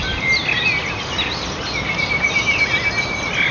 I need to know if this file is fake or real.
real